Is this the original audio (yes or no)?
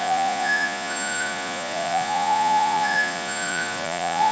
no